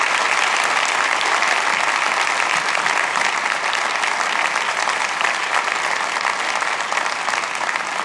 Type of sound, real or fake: real